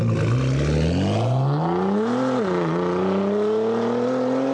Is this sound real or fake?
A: real